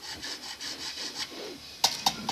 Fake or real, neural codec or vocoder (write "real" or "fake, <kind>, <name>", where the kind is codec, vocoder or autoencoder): real